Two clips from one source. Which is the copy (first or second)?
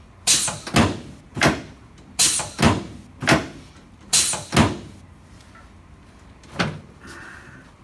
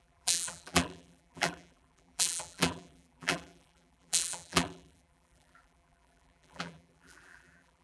second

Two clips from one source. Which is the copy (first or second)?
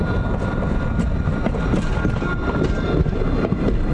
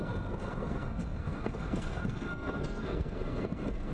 second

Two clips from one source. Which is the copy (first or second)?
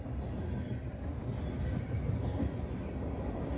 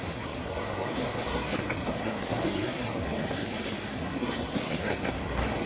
second